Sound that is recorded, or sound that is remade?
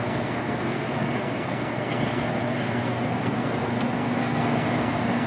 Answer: remade